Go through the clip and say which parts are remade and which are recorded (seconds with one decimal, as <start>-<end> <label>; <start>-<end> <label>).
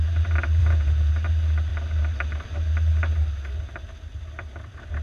0.0-0.6 recorded; 0.6-1.1 remade; 1.1-5.0 recorded